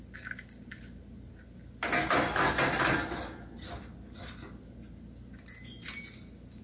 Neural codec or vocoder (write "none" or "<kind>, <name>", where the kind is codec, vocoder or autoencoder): none